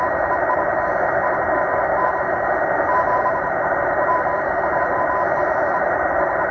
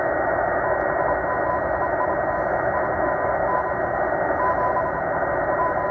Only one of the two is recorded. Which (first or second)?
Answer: second